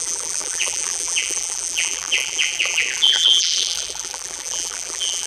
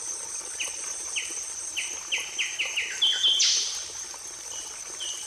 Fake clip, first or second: first